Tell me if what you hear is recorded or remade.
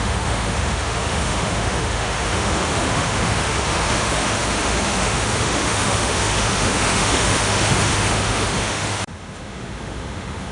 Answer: remade